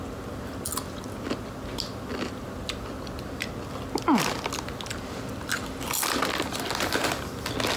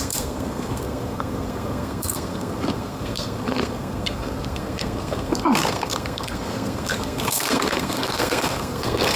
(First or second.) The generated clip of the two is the second